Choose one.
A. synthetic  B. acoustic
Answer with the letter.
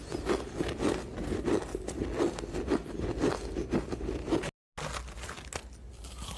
B